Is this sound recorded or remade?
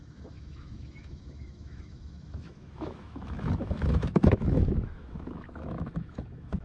remade